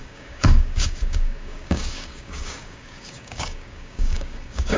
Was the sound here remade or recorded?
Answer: remade